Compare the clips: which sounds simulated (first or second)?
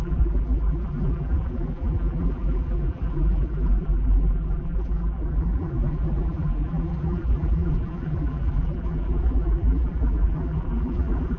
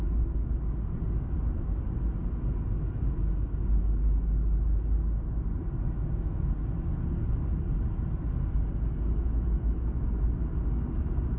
first